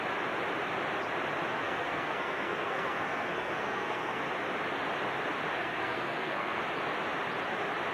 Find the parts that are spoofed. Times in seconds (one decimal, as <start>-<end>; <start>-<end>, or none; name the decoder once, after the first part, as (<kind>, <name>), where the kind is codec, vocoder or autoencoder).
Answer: 1.5-4.2 (codec, SNAC); 5.5-6.6